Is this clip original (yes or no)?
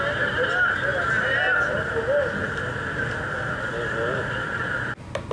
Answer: yes